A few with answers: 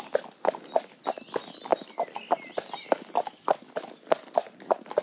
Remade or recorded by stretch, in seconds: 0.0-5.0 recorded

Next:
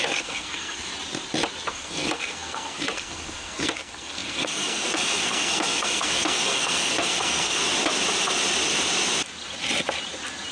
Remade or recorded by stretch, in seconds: 0.0-0.9 remade; 0.9-1.7 recorded; 1.7-7.6 remade; 7.6-10.5 recorded

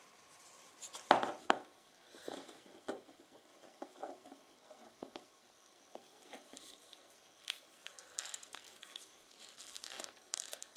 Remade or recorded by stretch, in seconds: 0.0-1.4 recorded; 1.4-10.8 remade

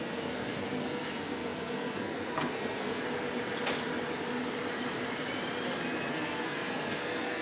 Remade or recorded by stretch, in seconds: 0.0-3.0 remade; 3.0-6.1 recorded; 6.1-7.4 remade

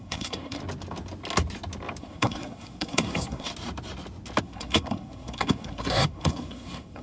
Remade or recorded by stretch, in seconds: 0.0-0.6 remade; 0.6-2.0 recorded; 2.0-3.5 remade; 3.5-4.4 recorded; 4.4-7.0 remade